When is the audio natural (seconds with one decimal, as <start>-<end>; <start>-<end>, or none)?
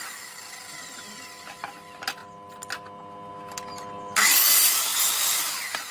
0.0-5.9